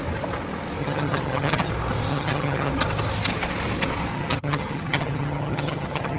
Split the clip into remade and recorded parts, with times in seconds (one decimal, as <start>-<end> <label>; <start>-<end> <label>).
0.0-0.8 recorded; 0.8-1.7 remade; 1.7-2.1 recorded; 2.1-2.7 remade; 2.7-4.1 recorded; 4.1-6.2 remade